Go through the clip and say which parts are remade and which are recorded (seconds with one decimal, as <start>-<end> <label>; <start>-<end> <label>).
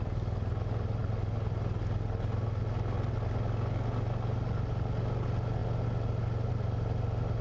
0.0-7.4 recorded